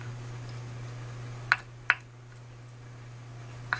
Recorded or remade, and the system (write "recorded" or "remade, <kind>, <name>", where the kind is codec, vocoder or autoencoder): recorded